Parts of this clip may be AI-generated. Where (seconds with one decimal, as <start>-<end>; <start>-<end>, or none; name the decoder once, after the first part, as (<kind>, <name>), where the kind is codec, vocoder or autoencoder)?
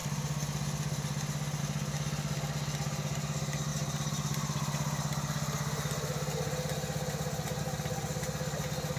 none